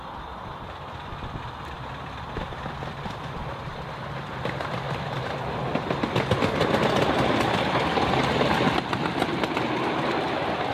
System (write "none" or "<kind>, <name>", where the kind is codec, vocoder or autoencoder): none